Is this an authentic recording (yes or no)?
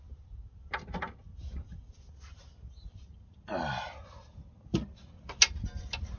yes